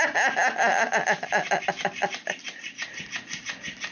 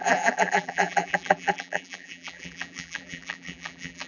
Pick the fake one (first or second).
second